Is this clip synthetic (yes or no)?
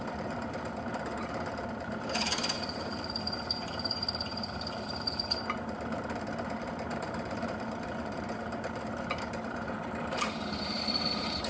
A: yes